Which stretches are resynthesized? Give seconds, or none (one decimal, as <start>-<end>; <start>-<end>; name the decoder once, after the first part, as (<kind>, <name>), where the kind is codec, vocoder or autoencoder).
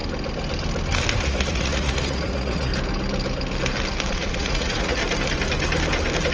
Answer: 1.2-2.7 (vocoder, Vocos); 4.1-5.0